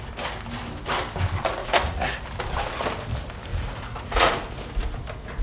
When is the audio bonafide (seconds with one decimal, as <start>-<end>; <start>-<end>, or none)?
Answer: 0.0-1.6; 2.2-3.5; 4.3-5.4